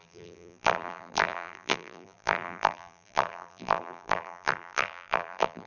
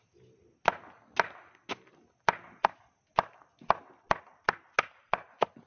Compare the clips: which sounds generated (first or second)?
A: first